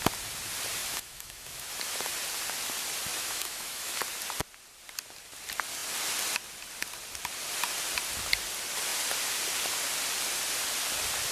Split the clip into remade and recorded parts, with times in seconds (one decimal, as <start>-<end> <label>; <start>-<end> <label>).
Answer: 0.0-0.8 recorded; 0.8-1.7 remade; 1.7-3.1 recorded; 3.1-4.0 remade; 4.0-11.3 recorded